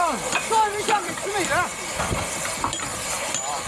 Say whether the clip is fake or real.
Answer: fake